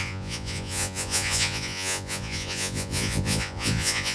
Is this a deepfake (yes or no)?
yes